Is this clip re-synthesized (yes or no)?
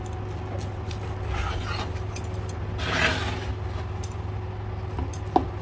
no